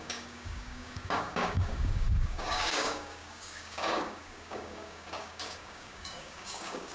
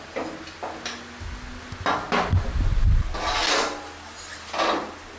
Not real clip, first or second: first